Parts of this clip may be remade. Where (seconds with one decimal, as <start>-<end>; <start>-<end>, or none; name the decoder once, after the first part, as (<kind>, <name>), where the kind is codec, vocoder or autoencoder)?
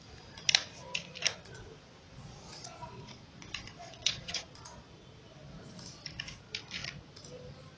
1.4-4.9 (vocoder, Vocos)